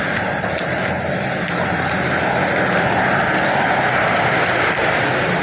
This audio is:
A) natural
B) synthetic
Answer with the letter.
A